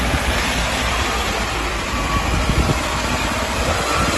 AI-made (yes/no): yes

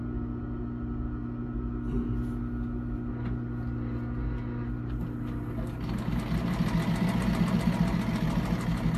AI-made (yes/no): no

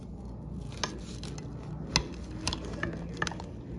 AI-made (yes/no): no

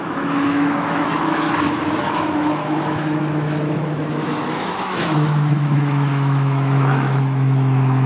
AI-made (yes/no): yes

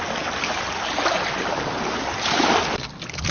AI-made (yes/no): no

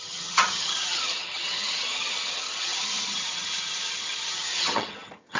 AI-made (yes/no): yes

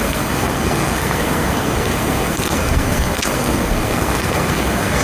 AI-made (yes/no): yes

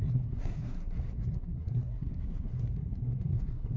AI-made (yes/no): yes